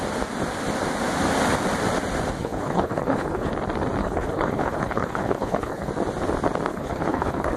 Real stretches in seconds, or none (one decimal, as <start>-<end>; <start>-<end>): 0.0-2.4; 3.5-4.0; 5.9-6.7